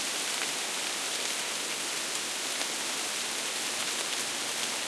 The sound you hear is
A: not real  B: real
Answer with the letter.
B